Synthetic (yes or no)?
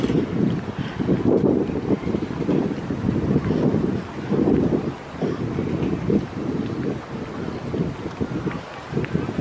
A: no